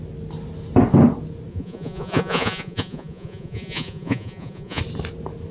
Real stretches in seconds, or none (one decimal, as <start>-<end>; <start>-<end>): 0.0-1.5; 4.8-5.5